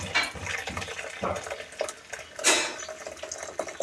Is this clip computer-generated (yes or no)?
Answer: no